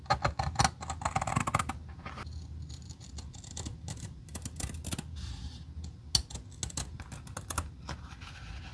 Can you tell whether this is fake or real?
real